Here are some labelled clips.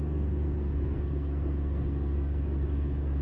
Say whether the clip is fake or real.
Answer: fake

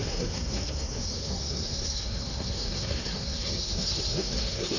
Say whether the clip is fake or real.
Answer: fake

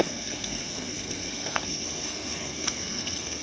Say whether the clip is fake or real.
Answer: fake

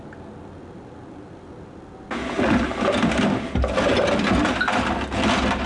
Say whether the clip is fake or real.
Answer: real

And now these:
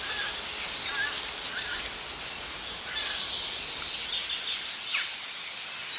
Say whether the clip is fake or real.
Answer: real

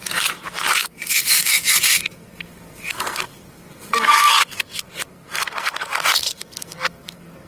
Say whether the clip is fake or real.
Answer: fake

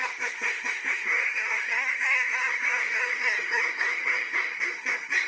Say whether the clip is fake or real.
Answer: fake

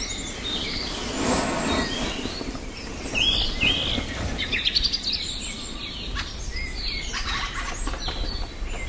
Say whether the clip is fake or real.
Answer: real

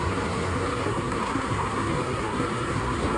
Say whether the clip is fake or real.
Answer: fake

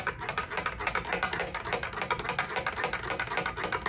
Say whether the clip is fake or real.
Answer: real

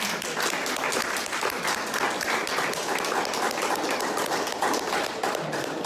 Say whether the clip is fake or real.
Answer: real